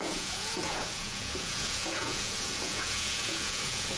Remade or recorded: remade